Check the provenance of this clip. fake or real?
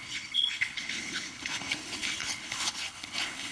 fake